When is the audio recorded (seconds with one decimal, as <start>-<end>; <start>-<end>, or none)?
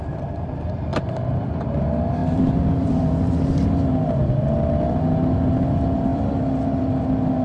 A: 0.0-0.9; 1.6-2.2; 3.9-6.1; 7.0-7.4